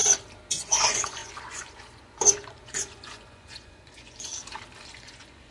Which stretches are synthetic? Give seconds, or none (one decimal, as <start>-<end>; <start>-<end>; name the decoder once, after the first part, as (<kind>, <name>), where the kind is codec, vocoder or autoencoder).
0.5-4.3 (vocoder, Vocos); 4.8-5.5